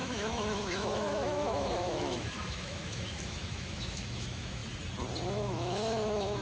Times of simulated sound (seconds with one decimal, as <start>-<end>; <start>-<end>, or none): 0.0-4.6; 5.3-6.4